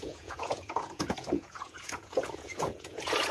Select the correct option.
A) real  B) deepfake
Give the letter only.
B